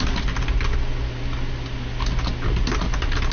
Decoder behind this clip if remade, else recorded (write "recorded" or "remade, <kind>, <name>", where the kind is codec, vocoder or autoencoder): recorded